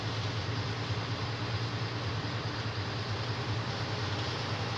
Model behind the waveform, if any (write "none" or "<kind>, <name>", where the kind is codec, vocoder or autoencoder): none